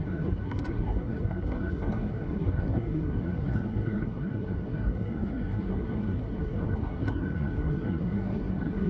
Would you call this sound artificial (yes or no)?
yes